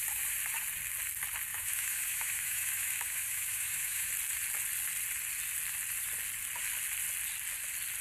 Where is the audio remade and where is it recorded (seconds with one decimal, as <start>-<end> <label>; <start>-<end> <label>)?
0.0-1.5 recorded; 1.5-4.1 remade; 4.1-8.0 recorded